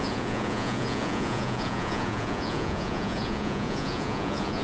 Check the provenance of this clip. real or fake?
fake